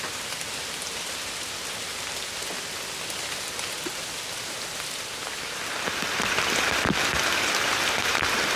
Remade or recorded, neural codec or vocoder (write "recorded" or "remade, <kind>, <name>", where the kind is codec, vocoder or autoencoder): recorded